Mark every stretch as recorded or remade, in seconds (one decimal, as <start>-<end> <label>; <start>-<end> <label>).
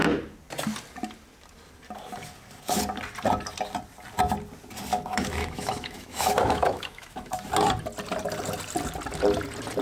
0.0-4.9 recorded; 4.9-7.5 remade; 7.5-9.8 recorded